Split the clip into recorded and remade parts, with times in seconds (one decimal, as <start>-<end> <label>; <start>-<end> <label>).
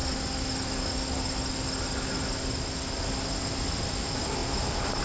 0.0-5.0 recorded